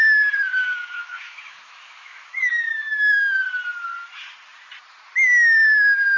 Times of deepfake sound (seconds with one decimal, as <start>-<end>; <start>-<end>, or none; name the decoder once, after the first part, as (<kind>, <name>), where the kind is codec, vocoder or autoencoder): 0.6-3.4 (autoencoder, DAC-VAE)